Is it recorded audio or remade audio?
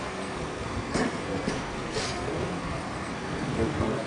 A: remade